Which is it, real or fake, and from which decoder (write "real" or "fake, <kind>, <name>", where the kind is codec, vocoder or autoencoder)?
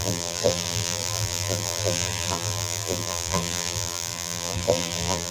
fake, vocoder, BigVGAN v2